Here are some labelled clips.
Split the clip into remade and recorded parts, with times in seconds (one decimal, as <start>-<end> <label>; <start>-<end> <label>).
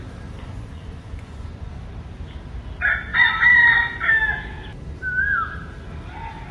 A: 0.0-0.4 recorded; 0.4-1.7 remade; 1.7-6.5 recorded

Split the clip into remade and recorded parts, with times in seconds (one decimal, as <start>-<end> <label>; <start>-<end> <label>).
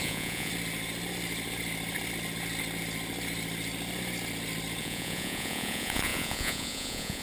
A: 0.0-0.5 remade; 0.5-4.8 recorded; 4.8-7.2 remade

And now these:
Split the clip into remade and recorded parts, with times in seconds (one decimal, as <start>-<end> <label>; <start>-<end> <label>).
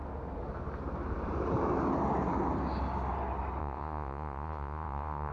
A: 0.0-3.6 recorded; 3.6-5.3 remade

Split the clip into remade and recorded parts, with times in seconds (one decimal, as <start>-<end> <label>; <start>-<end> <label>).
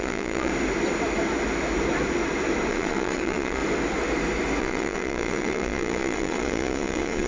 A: 0.0-0.5 remade; 0.5-2.7 recorded; 2.7-3.6 remade; 3.6-4.6 recorded; 4.6-7.3 remade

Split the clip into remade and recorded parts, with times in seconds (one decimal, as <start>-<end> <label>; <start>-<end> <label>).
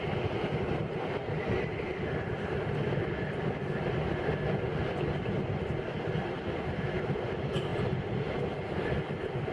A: 0.0-9.5 recorded